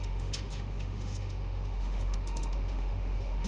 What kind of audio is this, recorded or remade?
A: remade